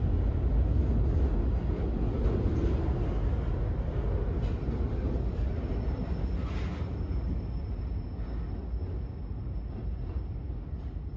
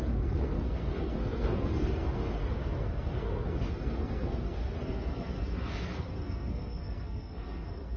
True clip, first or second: first